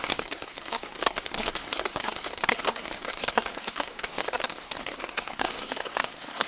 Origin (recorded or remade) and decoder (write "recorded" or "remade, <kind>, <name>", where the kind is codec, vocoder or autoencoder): remade, codec, SNAC